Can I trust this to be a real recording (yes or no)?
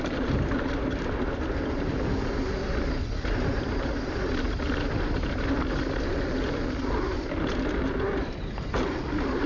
yes